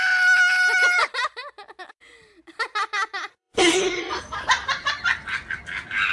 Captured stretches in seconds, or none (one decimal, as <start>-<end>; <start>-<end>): 0.0-3.3; 4.0-6.1